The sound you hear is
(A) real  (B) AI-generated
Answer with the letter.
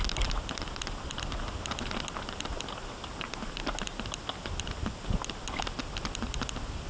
A